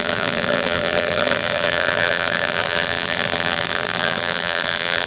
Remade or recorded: remade